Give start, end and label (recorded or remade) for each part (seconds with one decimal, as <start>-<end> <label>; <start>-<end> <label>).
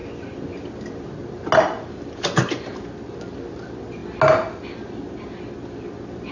0.0-6.3 recorded